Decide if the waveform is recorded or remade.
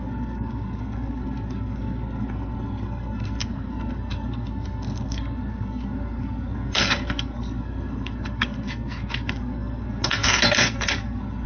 remade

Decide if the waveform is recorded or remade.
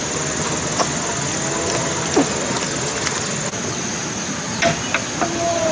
recorded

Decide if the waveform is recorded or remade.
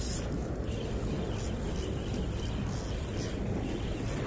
recorded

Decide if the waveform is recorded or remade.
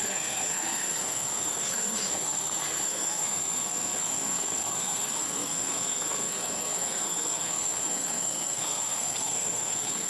remade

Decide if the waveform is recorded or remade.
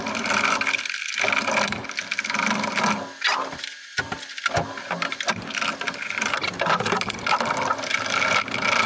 recorded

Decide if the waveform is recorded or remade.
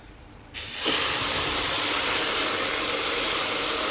remade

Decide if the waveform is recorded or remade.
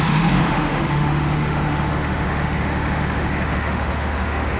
remade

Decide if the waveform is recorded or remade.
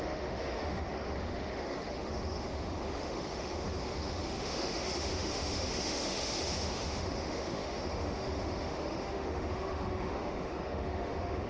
remade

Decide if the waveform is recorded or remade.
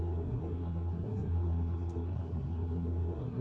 remade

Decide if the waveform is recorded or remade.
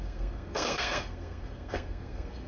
remade